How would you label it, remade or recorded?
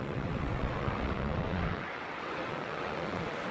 remade